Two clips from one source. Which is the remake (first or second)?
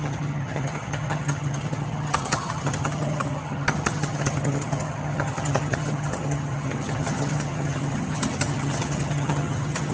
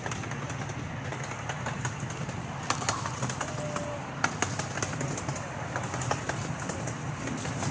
first